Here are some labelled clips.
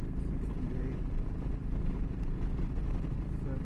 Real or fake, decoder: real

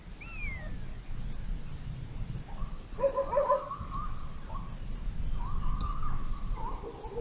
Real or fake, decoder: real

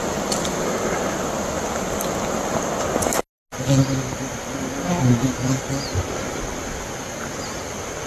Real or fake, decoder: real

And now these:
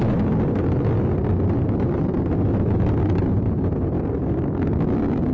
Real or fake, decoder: real